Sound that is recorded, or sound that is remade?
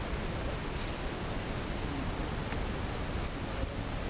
recorded